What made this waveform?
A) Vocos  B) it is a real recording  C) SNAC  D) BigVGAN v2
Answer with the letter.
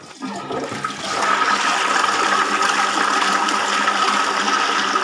B